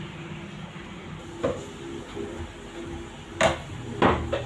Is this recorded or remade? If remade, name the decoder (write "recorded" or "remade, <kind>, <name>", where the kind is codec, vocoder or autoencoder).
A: recorded